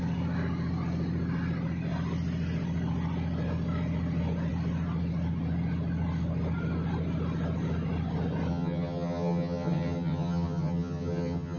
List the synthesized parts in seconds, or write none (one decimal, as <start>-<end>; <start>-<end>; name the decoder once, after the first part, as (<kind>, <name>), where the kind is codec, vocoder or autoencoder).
8.5-11.6 (vocoder, HiFi-GAN)